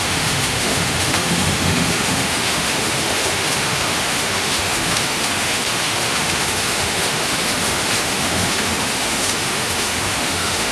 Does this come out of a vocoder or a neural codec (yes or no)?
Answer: yes